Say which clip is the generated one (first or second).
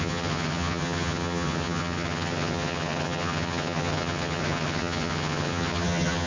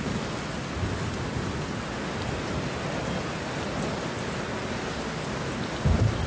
first